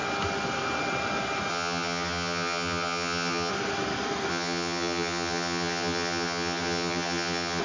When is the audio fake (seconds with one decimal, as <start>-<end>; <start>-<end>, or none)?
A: 1.5-3.5; 4.3-7.6